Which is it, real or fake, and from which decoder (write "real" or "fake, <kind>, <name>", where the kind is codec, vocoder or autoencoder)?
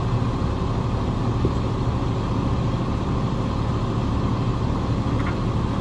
real